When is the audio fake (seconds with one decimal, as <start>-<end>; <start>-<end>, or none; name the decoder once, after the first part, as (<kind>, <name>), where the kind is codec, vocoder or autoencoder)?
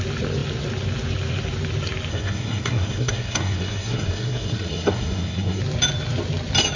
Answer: 2.1-5.6 (codec, SNAC)